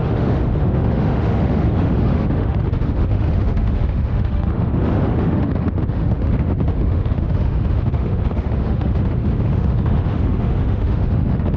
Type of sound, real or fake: fake